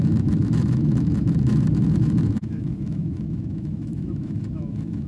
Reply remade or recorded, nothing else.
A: remade